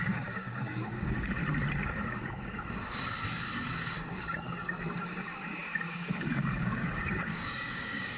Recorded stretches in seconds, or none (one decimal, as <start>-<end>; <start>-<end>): 1.4-1.9